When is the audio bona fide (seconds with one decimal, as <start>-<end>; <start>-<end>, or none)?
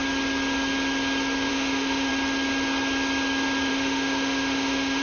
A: 0.0-1.5; 2.1-3.7